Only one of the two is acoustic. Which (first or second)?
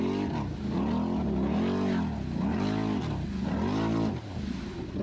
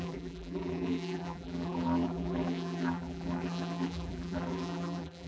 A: first